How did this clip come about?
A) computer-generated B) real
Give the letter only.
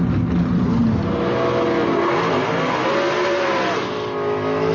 B